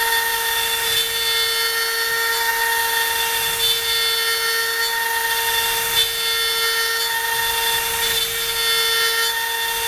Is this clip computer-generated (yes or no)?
no